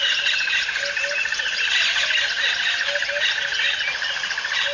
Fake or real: real